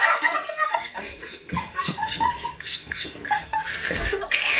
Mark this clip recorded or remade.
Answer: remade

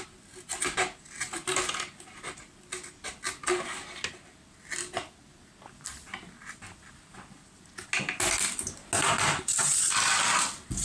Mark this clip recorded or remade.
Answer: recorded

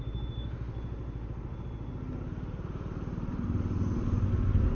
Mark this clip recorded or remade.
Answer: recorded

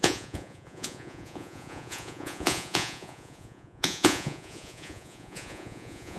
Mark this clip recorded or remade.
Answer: remade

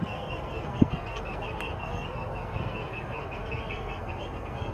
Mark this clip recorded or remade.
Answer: remade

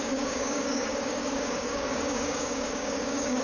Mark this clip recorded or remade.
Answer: remade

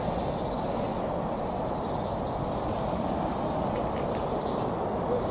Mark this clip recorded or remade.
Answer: recorded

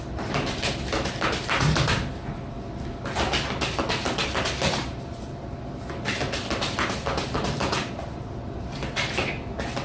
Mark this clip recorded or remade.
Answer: recorded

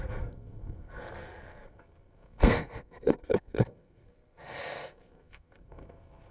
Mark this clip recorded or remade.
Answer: remade